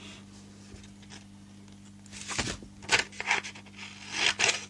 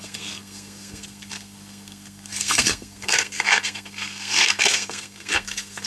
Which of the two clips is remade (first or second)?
second